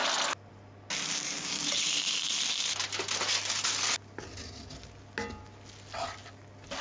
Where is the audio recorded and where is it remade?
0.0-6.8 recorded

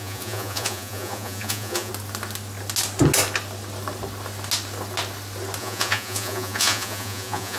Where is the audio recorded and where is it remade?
0.0-1.9 remade; 1.9-5.6 recorded; 5.6-7.6 remade